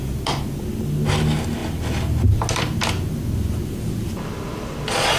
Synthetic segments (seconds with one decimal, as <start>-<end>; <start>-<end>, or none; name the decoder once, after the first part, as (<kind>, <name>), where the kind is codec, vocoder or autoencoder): none